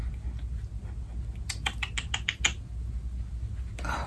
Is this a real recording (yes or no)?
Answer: yes